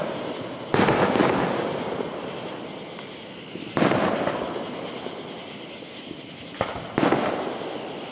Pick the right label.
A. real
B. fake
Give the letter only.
A